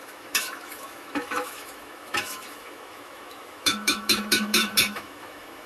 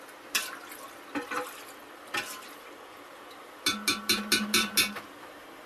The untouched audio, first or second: second